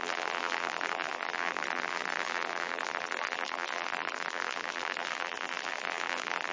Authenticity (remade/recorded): remade